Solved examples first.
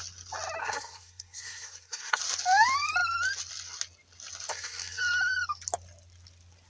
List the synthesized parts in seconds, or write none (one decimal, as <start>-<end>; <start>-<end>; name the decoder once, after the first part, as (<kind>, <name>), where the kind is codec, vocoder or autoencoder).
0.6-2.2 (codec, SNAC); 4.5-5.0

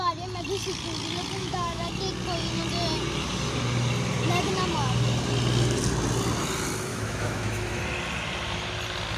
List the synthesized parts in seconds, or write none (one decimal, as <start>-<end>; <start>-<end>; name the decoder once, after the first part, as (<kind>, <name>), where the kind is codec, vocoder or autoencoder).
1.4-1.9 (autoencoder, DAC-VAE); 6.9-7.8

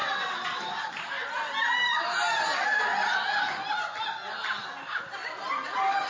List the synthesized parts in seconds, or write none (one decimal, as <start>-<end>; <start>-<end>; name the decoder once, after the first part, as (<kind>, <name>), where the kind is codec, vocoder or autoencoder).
0.0-0.6 (vocoder, WaveNeXt)